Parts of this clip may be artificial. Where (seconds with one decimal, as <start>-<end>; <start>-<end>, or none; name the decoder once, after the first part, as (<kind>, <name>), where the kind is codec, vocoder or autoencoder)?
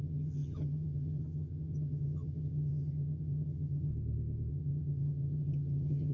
0.0-3.9 (vocoder, HiFi-GAN); 4.5-6.1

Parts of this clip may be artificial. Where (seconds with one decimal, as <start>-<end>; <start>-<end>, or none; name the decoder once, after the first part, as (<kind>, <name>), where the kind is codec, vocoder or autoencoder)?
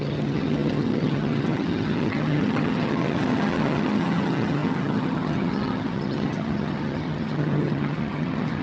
0.0-8.6 (vocoder, HiFi-GAN)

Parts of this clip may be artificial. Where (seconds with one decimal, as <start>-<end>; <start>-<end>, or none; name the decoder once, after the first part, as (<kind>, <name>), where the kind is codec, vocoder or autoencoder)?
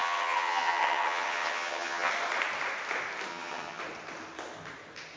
0.0-2.1 (vocoder, HiFi-GAN); 3.3-3.8